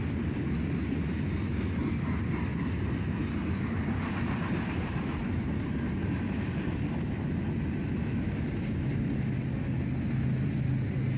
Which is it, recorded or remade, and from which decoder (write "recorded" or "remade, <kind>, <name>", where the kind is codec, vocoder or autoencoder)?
recorded